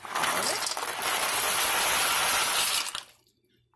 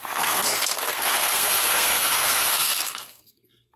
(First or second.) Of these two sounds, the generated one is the second